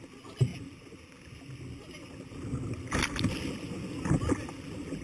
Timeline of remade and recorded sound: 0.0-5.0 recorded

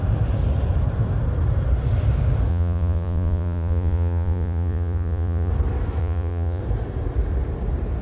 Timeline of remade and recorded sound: 0.0-2.5 recorded; 2.5-5.5 remade; 5.5-6.0 recorded; 6.0-6.6 remade; 6.6-8.0 recorded

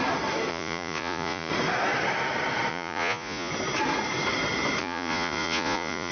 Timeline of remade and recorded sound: 0.0-0.5 recorded; 0.5-1.5 remade; 1.5-2.7 recorded; 2.7-3.5 remade; 3.5-4.8 recorded; 4.8-6.1 remade